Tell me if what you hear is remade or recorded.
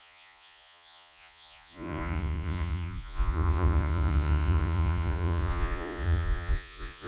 remade